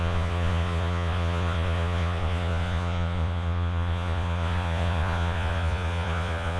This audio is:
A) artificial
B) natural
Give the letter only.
A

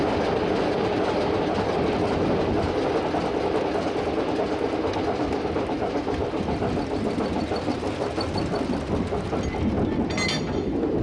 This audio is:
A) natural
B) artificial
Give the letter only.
A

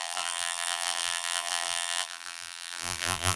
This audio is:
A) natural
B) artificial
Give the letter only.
B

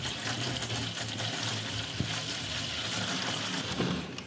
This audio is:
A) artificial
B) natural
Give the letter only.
B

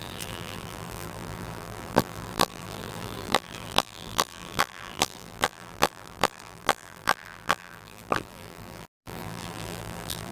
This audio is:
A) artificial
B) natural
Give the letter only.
A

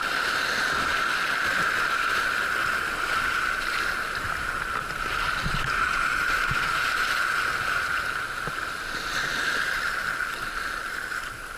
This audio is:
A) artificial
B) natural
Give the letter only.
B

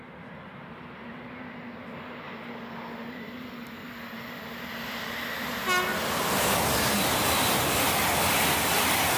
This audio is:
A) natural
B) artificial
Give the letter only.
A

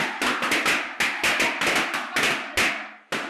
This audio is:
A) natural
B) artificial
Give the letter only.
A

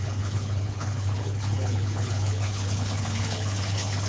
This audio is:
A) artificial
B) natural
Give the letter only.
A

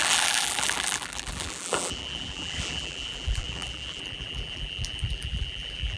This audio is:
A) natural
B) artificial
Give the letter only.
B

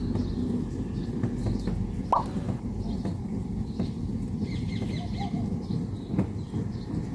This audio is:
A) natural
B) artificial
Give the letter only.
A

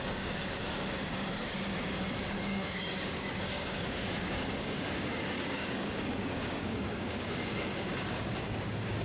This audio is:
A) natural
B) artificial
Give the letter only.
B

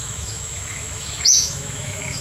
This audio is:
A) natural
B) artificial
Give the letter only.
B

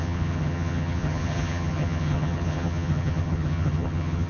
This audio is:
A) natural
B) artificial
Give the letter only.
B